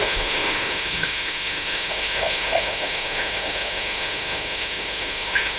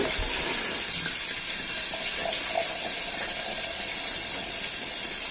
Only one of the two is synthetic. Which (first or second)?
first